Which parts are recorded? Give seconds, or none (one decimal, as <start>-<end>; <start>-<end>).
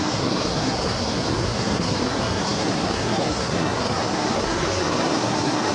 none